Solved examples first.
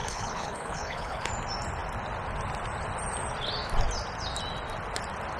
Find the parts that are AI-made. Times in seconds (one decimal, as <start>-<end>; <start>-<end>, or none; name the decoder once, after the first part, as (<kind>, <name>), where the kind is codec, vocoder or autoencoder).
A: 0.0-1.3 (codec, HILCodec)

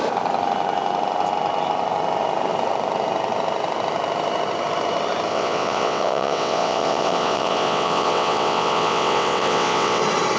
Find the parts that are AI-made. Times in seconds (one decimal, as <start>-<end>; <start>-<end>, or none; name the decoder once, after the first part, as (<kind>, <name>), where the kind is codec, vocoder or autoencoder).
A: 5.3-10.0 (vocoder, WaveNeXt)

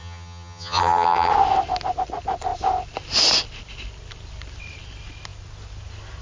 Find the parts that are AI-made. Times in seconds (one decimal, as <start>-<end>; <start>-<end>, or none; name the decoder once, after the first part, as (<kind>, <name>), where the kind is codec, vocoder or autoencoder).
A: 0.0-1.3 (vocoder, HiFi-GAN)

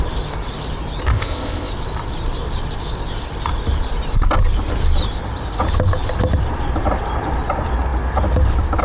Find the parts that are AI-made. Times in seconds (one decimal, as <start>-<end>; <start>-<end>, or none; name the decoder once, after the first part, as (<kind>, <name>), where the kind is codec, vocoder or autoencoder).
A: 1.1-1.7 (codec, ZipCodec)